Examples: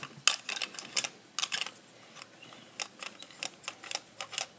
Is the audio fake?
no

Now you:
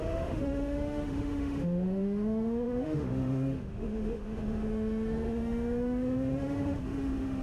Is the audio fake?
yes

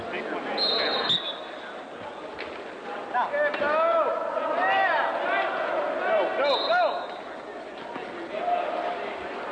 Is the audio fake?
no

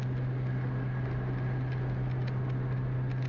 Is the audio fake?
no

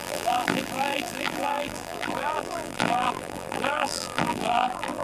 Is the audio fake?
yes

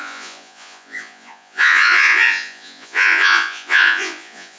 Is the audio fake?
yes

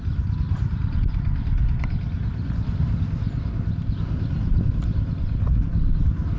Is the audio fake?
no